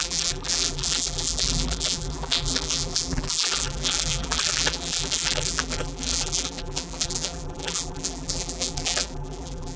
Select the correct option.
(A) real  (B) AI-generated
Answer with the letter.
B